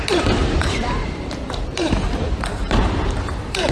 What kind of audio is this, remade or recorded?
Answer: remade